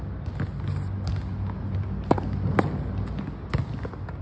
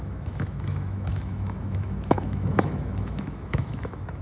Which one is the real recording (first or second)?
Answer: first